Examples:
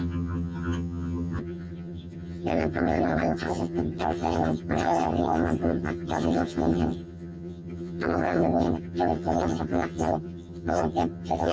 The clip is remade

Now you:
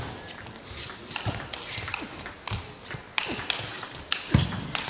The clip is recorded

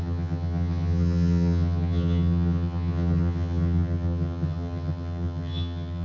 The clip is remade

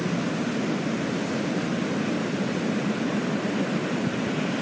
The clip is recorded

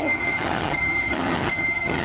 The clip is remade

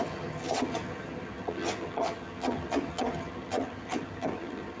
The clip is remade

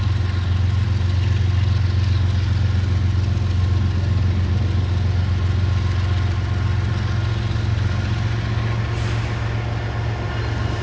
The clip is recorded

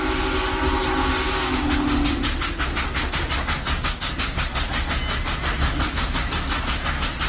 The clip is recorded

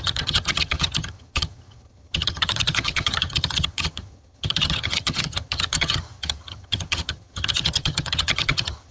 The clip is remade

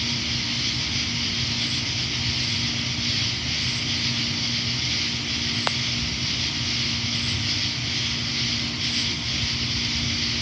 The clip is recorded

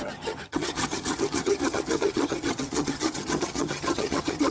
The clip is remade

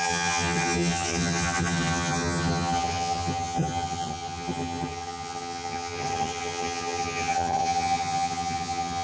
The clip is remade